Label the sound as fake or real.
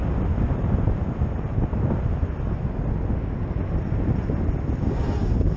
real